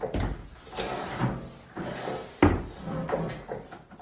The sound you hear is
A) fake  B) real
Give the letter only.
B